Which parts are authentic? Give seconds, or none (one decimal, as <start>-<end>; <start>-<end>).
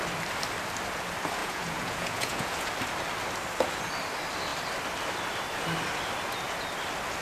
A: 0.0-1.4; 2.7-7.2